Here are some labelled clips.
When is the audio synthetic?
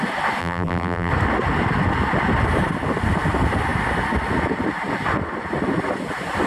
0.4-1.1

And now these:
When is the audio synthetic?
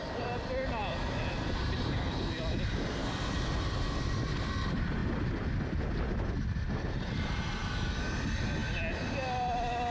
none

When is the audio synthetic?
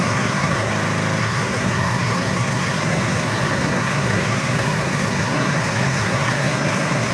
0.0-0.7; 1.2-7.1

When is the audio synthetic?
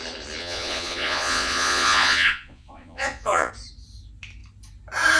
0.4-3.5